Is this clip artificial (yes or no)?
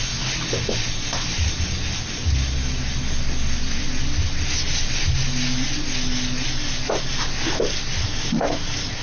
no